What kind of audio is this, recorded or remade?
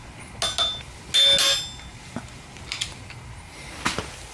recorded